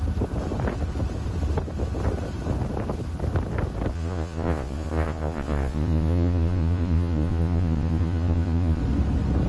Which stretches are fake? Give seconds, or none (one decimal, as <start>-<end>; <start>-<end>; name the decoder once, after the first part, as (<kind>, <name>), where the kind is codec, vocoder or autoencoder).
3.9-8.8 (vocoder, Vocos)